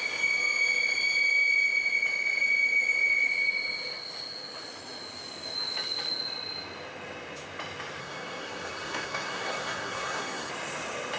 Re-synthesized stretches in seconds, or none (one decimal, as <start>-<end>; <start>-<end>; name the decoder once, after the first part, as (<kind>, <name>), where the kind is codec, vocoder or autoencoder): 8.0-10.5 (codec, SNAC)